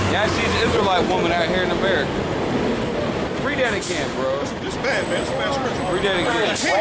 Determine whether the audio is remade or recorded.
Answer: recorded